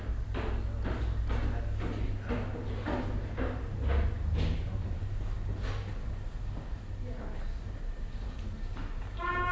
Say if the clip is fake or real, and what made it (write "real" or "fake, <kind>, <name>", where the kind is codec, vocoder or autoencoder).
real